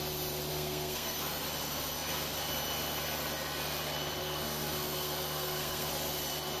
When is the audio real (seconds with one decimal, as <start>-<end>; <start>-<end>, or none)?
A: 0.0-0.5; 1.4-4.2; 5.9-6.6